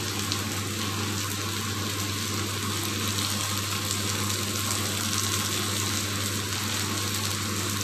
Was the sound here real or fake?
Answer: real